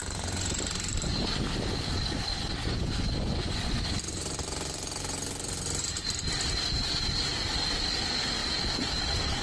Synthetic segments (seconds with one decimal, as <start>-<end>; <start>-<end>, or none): 0.0-0.6; 2.6-3.8